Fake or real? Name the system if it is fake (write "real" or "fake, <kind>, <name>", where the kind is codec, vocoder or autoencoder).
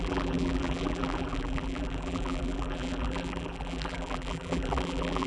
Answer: fake, vocoder, BigVGAN v2